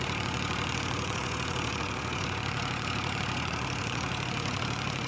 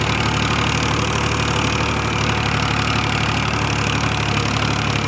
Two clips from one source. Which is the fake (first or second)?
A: first